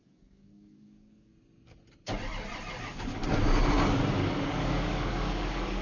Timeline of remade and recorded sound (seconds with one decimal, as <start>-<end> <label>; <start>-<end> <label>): 0.0-1.3 remade; 1.3-2.8 recorded; 2.8-3.2 remade; 3.2-4.4 recorded; 4.4-5.8 remade